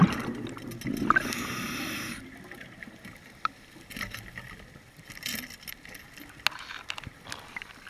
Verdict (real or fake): real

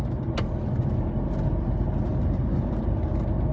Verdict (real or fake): real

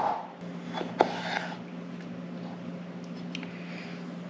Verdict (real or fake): real